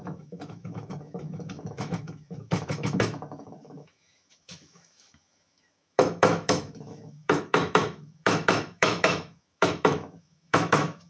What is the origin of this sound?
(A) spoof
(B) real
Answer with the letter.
A